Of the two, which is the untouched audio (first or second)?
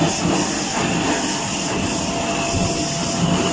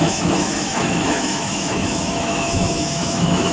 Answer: first